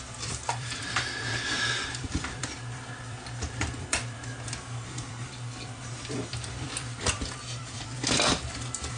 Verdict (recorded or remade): remade